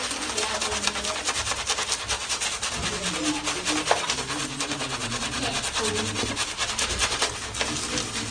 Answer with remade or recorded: recorded